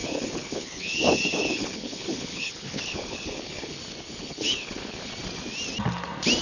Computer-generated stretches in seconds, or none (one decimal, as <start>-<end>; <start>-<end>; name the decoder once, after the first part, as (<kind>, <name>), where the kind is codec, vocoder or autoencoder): 0.0-3.8 (codec, HILCodec); 4.2-5.1

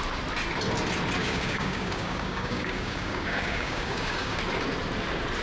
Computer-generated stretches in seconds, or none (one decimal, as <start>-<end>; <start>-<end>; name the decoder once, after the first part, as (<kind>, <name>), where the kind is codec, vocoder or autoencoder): 1.2-4.4 (codec, DAC)